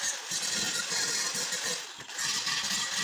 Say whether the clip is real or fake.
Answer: real